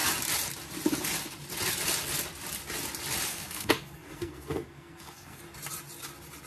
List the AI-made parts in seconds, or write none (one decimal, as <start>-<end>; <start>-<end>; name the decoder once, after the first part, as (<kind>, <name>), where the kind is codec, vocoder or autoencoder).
3.3-5.4 (codec, SNAC)

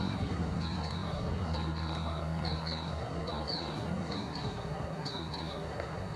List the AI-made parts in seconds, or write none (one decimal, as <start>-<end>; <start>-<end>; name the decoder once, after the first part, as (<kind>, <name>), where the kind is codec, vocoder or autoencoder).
0.0-6.2 (codec, SNAC)

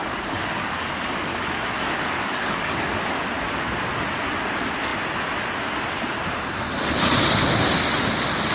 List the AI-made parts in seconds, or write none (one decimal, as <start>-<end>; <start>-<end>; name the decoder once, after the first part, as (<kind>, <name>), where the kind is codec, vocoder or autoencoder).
0.0-0.9 (codec, DAC); 1.3-3.2

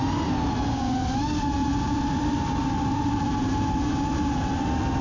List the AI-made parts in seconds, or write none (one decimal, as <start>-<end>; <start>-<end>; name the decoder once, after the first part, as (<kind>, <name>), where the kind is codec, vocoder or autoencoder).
1.6-4.6 (vocoder, BigVGAN v2)

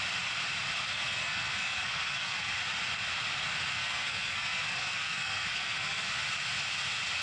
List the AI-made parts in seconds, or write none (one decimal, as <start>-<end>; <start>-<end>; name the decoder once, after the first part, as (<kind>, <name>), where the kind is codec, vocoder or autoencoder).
0.9-2.6 (codec, SNAC); 3.7-6.1

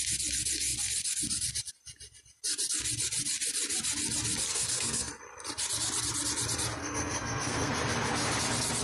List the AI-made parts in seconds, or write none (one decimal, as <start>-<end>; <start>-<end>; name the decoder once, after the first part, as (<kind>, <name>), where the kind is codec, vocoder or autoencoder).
4.5-5.1 (codec, SNAC); 6.8-7.7

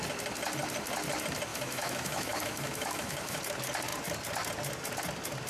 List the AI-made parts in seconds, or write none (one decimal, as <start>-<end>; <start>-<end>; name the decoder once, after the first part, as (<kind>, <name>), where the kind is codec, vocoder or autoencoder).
1.5-3.4 (autoencoder, DAC-VAE)

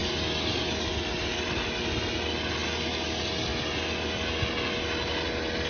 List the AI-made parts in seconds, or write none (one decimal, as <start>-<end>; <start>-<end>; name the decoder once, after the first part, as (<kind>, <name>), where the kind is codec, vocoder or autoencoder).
none